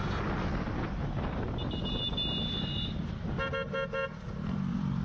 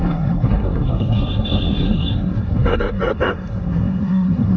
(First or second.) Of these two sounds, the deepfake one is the second